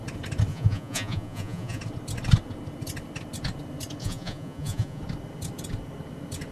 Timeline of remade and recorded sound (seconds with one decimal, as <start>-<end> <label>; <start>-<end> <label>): 0.0-0.5 recorded; 0.5-1.8 remade; 1.8-4.0 recorded; 4.0-5.0 remade; 5.0-6.5 recorded